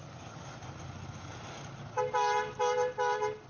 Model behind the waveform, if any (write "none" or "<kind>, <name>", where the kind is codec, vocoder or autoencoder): none